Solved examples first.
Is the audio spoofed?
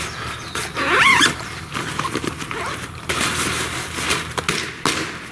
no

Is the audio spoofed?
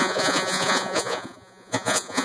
yes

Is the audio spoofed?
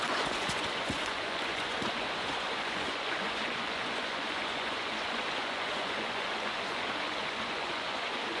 yes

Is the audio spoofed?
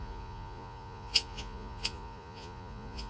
yes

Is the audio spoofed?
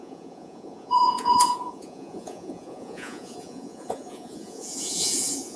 yes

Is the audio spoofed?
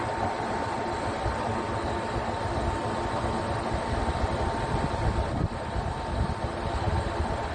no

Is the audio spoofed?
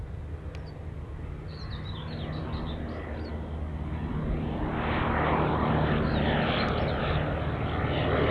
no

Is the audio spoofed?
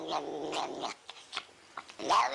no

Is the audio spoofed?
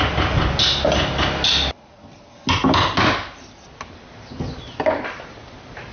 no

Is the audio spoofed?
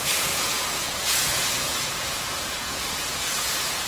yes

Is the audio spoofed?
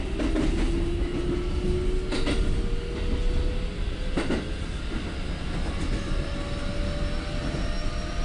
no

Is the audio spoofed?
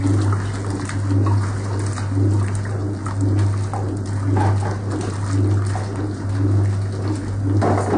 no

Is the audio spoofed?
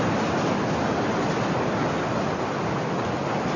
no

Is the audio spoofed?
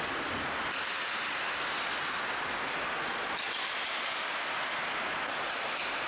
no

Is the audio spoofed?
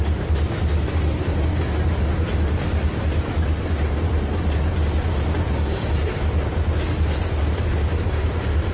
no